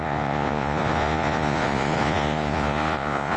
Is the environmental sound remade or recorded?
remade